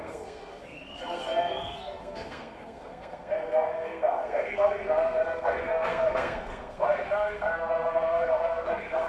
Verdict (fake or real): fake